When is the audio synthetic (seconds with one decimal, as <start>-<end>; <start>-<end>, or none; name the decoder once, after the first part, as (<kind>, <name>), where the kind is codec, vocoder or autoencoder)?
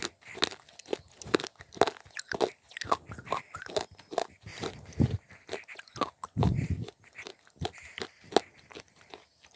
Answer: none